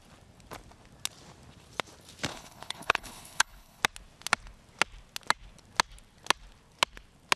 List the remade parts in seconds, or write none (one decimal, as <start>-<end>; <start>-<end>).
2.3-3.8